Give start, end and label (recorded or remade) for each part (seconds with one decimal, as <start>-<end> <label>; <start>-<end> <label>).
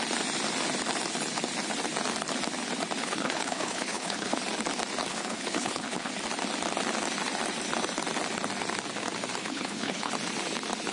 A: 0.0-3.0 recorded; 3.0-4.4 remade; 4.4-5.1 recorded; 5.1-6.1 remade; 6.1-9.4 recorded; 9.4-10.1 remade; 10.1-10.9 recorded